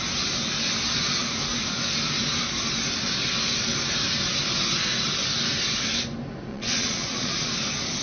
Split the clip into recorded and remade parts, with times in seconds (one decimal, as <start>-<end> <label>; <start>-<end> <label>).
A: 0.0-6.5 recorded; 6.5-7.5 remade; 7.5-8.0 recorded